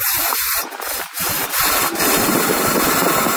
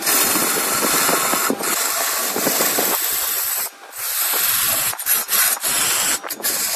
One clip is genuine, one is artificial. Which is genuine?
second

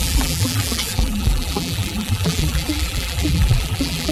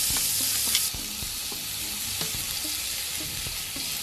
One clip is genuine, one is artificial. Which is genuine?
second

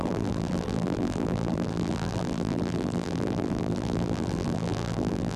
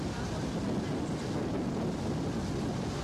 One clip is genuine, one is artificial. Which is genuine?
second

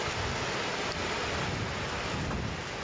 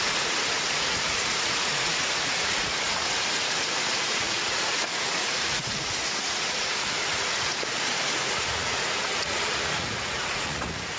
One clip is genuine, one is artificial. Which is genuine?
first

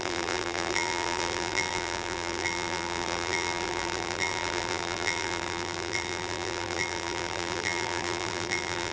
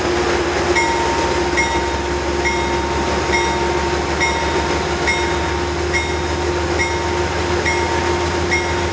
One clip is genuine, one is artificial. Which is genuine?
second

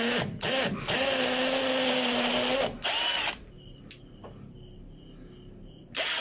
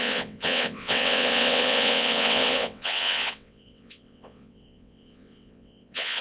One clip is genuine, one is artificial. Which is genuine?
first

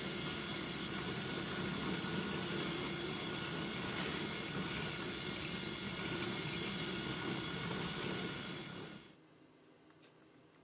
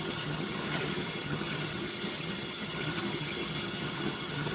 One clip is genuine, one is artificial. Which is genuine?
first